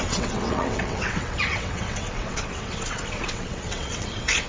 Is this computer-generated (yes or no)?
yes